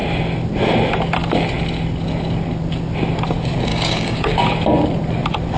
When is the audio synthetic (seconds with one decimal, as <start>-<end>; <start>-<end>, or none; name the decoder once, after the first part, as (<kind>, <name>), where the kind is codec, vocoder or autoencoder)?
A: 3.7-4.3 (codec, DAC)